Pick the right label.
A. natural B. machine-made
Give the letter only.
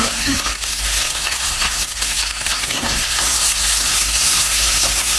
B